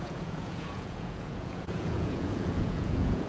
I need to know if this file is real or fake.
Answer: fake